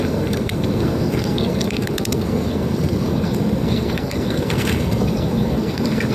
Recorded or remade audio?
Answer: remade